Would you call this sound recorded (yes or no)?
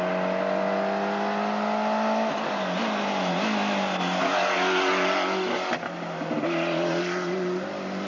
yes